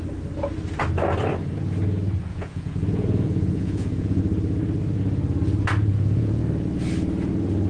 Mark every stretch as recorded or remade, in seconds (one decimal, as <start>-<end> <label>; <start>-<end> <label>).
0.0-2.3 recorded; 2.3-4.2 remade; 4.2-5.9 recorded; 5.9-6.4 remade; 6.4-7.7 recorded